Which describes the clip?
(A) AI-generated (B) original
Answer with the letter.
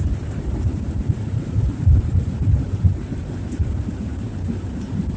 A